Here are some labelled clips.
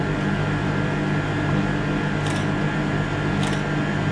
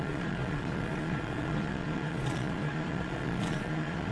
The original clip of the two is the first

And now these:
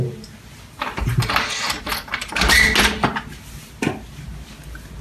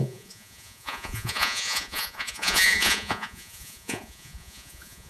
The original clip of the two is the first